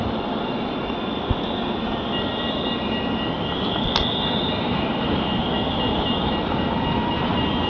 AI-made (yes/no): no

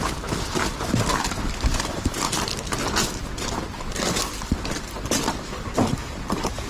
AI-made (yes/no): no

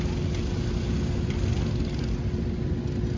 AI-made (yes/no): no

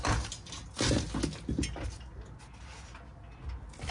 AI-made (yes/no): no